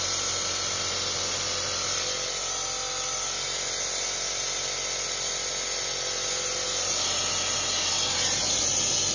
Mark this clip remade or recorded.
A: recorded